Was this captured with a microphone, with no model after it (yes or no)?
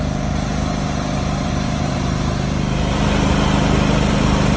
no